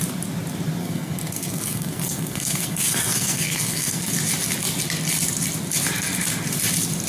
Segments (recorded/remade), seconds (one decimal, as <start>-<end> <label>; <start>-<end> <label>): 0.0-0.8 recorded; 0.8-4.1 remade; 4.1-7.1 recorded